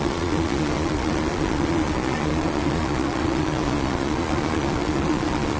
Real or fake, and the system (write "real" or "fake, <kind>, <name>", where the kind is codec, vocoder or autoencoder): fake, vocoder, Vocos